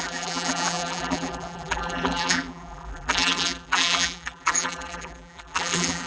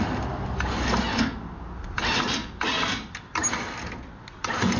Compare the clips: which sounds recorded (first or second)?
second